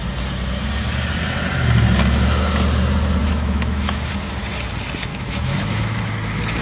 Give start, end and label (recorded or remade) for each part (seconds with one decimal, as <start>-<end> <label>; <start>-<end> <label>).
0.0-3.2 recorded; 3.2-4.1 remade; 4.1-5.1 recorded; 5.1-6.1 remade; 6.1-6.6 recorded